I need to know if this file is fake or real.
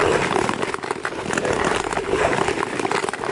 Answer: real